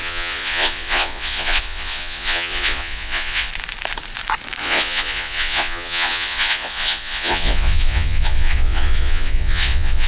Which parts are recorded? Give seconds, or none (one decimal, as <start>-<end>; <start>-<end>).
3.5-4.6